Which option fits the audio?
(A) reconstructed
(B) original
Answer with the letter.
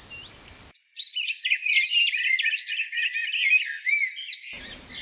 B